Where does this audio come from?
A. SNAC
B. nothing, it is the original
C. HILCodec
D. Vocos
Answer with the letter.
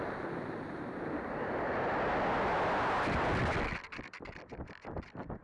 B